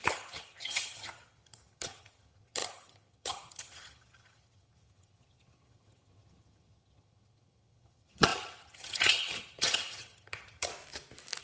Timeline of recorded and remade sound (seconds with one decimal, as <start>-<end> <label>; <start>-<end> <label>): 0.0-10.7 remade; 10.7-11.4 recorded